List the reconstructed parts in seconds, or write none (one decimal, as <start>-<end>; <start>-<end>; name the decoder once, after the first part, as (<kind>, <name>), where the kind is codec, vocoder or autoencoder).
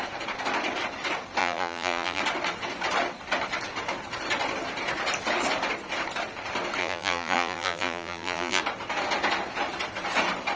1.4-2.2 (vocoder, BigVGAN v2); 6.8-8.6